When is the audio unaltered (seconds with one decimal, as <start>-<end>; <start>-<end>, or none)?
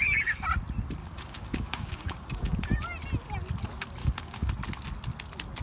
0.0-1.0; 2.6-4.0; 4.5-5.6